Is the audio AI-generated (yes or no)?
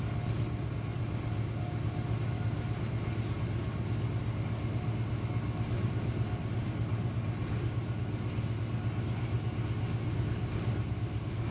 no